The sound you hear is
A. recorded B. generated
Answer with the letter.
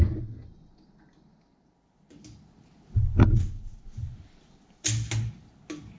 A